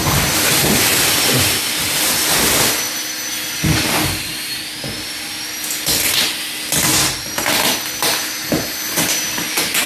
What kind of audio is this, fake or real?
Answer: real